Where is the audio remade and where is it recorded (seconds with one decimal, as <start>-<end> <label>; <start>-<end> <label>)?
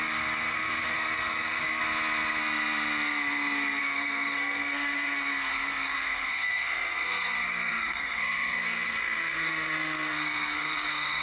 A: 0.0-1.8 remade; 1.8-3.8 recorded; 3.8-11.2 remade